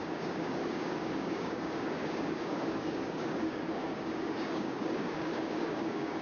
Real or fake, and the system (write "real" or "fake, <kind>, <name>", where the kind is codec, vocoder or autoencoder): fake, codec, DAC